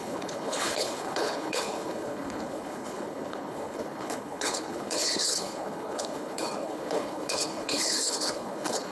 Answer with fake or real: fake